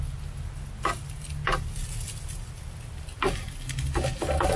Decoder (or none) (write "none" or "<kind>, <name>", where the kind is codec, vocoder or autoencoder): none